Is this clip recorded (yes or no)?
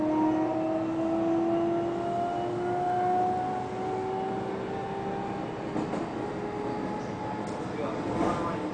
yes